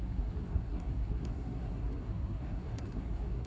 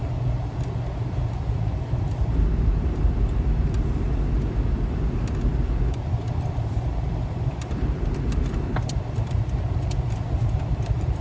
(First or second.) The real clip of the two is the second